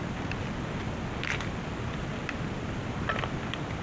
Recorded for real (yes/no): yes